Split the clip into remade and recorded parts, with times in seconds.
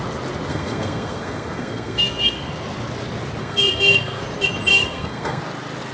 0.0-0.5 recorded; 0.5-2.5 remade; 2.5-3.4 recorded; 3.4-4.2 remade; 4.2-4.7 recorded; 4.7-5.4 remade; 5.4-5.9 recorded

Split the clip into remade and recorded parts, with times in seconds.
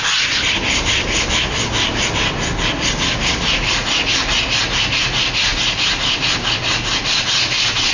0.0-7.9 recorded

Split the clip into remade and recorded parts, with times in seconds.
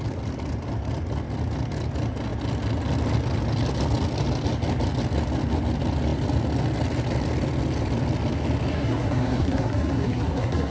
0.0-8.7 recorded; 8.7-10.7 remade